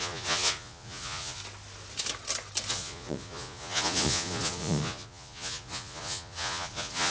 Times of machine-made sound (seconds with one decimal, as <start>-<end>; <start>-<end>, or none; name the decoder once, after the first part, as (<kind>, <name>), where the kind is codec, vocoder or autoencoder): 0.0-1.4 (vocoder, Vocos); 2.7-7.1